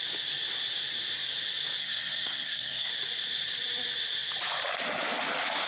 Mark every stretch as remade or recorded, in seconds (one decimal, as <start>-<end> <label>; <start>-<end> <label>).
0.0-1.8 recorded; 1.8-2.9 remade; 2.9-5.7 recorded